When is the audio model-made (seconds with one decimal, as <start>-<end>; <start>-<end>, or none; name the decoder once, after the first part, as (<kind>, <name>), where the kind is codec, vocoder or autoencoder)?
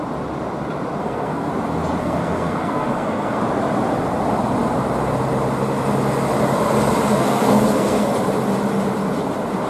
1.0-1.5 (codec, SNAC); 2.0-3.4; 7.1-8.1